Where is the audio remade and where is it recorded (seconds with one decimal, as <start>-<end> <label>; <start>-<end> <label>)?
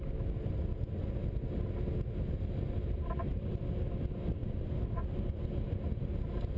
0.0-6.6 recorded